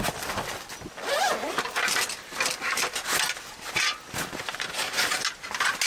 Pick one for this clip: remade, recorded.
recorded